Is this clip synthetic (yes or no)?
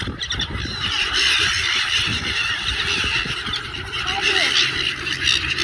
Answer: yes